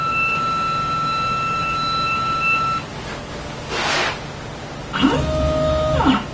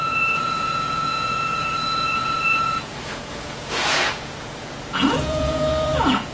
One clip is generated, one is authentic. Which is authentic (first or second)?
first